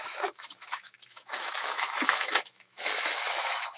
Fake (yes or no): yes